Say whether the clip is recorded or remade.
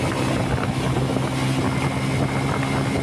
recorded